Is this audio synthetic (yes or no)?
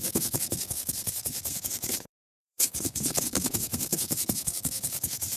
yes